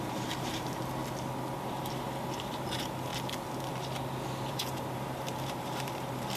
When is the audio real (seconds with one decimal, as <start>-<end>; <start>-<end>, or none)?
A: 1.0-1.6; 3.1-4.5